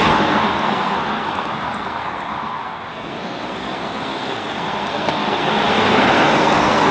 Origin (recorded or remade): remade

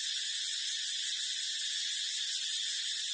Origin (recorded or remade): recorded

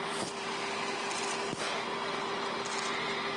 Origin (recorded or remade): recorded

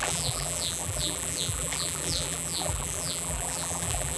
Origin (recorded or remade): remade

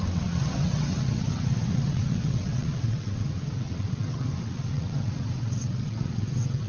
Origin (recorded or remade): remade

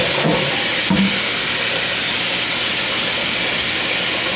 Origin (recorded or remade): recorded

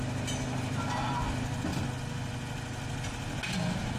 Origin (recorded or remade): recorded